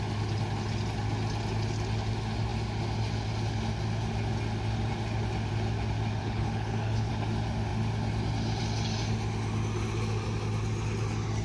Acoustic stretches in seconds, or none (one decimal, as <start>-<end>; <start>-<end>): 0.0-6.2; 7.1-11.4